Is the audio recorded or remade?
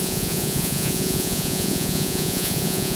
remade